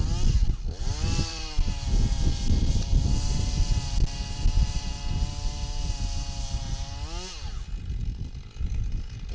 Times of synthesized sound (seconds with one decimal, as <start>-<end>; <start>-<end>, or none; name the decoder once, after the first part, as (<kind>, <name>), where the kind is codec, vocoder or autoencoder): 1.3-5.3 (vocoder, BigVGAN v2)